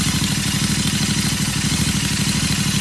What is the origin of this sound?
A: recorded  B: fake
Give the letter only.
A